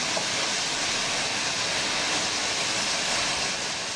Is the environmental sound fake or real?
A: real